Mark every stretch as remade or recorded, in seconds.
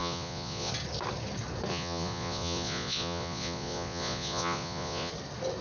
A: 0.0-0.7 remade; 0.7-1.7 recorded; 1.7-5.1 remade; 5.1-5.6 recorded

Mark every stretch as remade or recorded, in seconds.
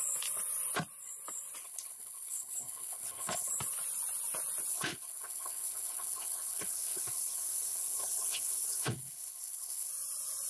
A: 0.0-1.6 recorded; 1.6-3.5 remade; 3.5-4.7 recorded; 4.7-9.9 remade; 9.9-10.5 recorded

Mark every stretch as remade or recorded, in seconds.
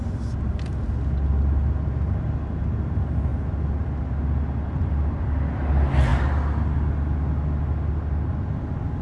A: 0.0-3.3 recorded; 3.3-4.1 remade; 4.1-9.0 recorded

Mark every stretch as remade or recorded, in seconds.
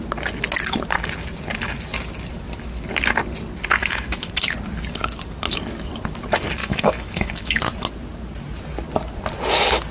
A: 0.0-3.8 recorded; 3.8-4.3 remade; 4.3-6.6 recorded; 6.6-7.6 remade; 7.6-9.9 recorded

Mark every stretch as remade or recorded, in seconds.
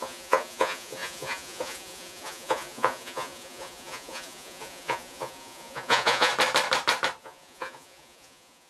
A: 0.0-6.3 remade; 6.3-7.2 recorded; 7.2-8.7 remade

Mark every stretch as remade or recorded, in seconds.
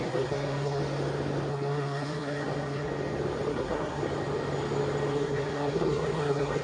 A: 0.0-0.8 remade; 0.8-1.5 recorded; 1.5-2.9 remade; 2.9-3.5 recorded; 3.5-4.0 remade; 4.0-5.1 recorded; 5.1-6.6 remade